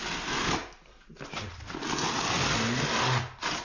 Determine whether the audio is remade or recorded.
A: recorded